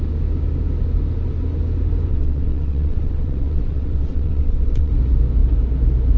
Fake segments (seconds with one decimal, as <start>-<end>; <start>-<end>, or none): 2.1-4.9